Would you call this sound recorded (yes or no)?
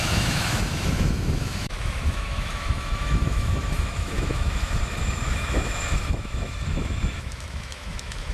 no